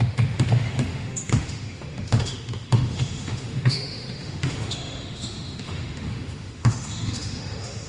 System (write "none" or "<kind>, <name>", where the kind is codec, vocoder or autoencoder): autoencoder, DAC-VAE